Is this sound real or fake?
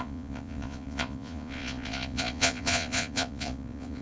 fake